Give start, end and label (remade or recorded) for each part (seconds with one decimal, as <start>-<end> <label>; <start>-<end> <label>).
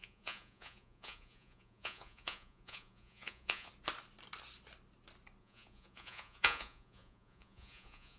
0.0-3.7 remade; 3.7-5.4 recorded; 5.4-8.2 remade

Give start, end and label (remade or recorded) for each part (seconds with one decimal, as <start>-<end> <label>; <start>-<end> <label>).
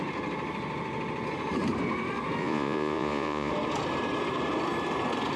0.0-2.4 recorded; 2.4-3.5 remade; 3.5-5.4 recorded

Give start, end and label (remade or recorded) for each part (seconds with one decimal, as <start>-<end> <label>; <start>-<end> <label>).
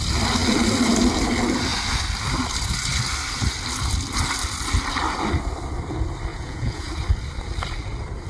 0.0-6.3 recorded; 6.3-6.9 remade; 6.9-8.3 recorded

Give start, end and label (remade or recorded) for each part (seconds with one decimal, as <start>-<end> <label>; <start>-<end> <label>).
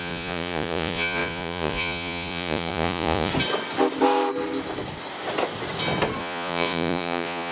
0.0-3.3 remade; 3.3-6.2 recorded; 6.2-7.5 remade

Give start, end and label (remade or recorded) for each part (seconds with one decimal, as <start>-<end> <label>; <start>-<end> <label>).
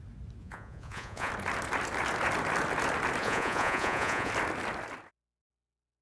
0.0-0.4 recorded; 0.4-1.3 remade; 1.3-3.2 recorded; 3.2-4.3 remade; 4.3-6.0 recorded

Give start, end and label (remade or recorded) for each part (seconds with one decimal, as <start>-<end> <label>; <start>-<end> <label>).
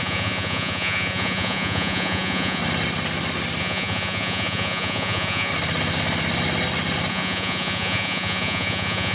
0.0-2.6 remade; 2.6-3.6 recorded; 3.6-5.5 remade; 5.5-7.1 recorded; 7.1-9.1 remade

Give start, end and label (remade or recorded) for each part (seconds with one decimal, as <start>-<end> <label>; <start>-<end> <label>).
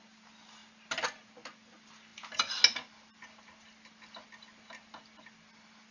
0.0-5.9 recorded